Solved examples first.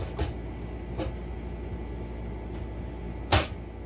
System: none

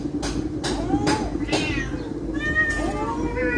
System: none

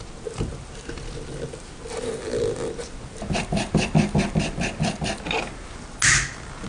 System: none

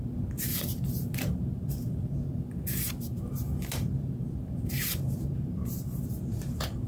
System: vocoder, BigVGAN v2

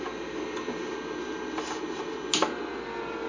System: none